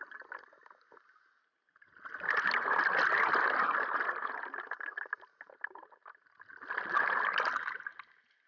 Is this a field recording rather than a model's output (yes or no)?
yes